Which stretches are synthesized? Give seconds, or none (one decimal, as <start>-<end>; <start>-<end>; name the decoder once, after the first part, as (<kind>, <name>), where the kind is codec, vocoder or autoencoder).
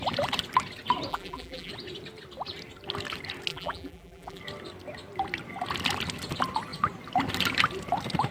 1.1-1.7 (vocoder, BigVGAN v2); 3.5-4.4